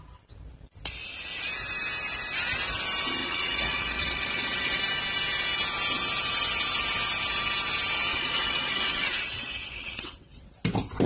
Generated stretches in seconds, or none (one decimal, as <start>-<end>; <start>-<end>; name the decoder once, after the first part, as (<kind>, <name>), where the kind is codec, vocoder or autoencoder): 3.2-4.8 (vocoder, WaveNeXt); 8.1-10.5